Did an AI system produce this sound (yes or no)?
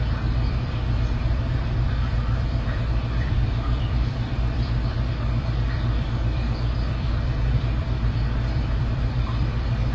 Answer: yes